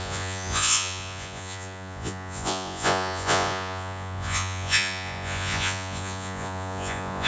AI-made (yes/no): yes